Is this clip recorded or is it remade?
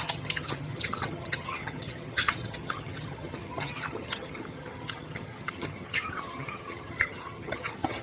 remade